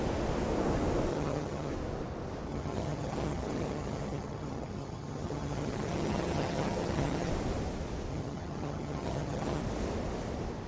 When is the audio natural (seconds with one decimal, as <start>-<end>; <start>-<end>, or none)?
0.0-1.1; 1.7-2.5; 7.3-8.1; 9.6-10.7